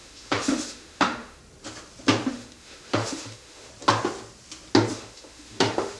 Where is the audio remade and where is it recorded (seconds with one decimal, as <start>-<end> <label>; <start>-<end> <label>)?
0.0-1.4 remade; 1.4-2.3 recorded; 2.3-3.7 remade; 3.7-4.9 recorded; 4.9-6.0 remade